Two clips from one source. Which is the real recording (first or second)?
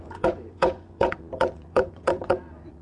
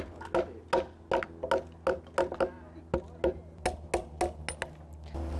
second